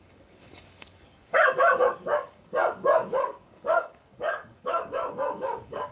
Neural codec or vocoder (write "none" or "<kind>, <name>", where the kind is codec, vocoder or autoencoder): codec, DAC